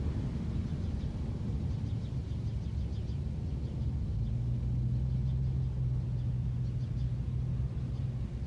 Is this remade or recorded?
recorded